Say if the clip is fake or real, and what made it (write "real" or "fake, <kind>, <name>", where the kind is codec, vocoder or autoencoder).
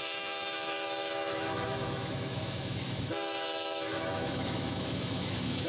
fake, autoencoder, DAC-VAE